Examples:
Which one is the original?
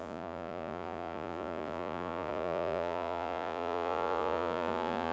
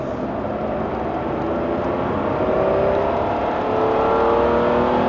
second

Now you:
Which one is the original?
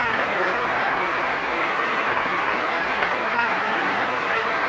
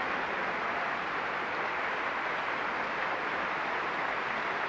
second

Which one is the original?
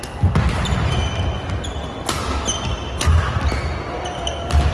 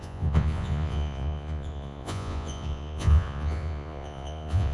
first